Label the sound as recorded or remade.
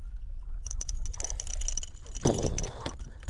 recorded